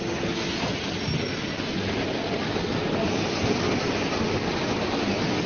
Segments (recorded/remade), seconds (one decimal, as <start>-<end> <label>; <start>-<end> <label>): 0.0-5.5 recorded